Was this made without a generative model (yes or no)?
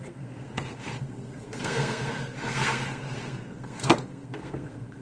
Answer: no